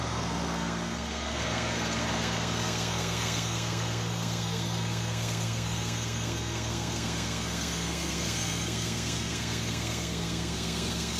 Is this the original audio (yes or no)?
no